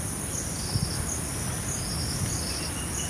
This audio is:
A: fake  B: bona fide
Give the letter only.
B